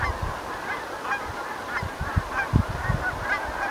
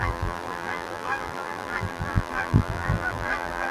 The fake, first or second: second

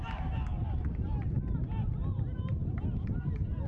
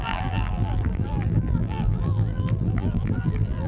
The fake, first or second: second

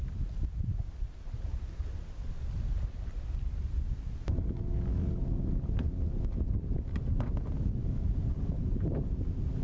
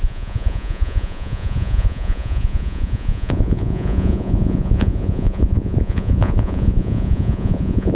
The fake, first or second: second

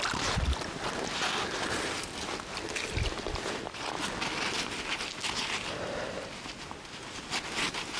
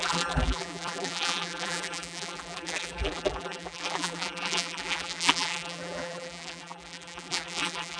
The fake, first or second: second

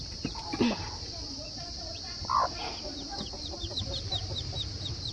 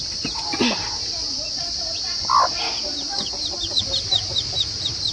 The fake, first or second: first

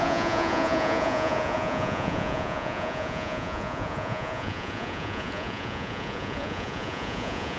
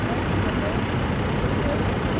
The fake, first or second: first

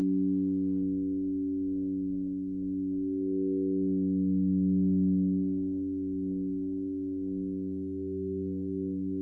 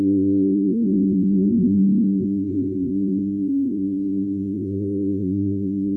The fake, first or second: second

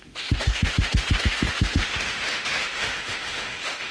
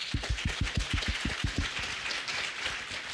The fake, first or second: first